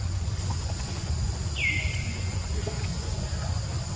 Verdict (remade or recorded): remade